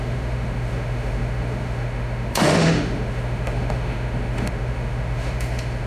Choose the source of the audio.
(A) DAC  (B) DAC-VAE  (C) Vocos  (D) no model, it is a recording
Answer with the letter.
B